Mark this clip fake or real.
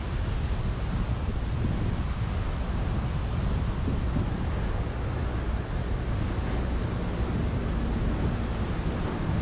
real